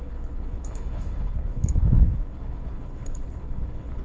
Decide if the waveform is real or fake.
fake